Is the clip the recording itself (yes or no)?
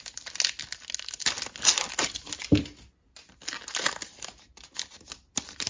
yes